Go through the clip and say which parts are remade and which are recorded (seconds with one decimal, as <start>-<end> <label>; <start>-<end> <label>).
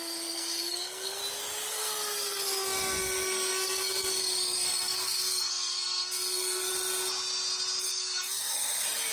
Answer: 0.0-1.2 remade; 1.2-1.7 recorded; 1.7-6.7 remade; 6.7-7.8 recorded; 7.8-9.1 remade